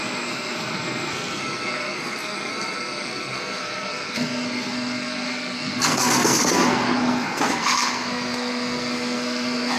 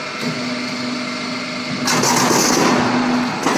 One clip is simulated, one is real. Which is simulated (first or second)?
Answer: first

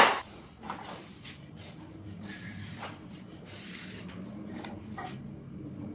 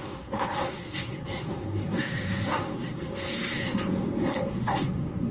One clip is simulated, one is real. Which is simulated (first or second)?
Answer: second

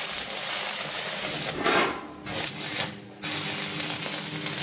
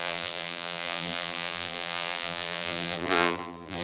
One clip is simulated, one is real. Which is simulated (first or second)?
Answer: second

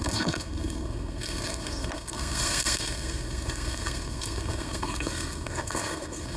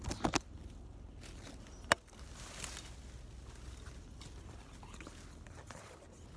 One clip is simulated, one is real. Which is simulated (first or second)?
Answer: first